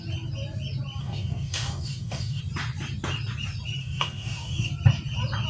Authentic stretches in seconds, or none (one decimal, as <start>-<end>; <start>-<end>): 0.0-1.0; 2.4-3.8; 4.7-5.5